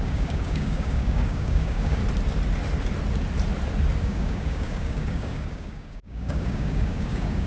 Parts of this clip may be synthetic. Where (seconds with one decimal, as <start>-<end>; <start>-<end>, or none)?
0.0-2.0; 4.0-7.5